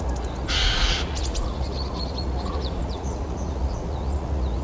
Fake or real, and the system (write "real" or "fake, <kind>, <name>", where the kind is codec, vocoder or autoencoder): fake, vocoder, Vocos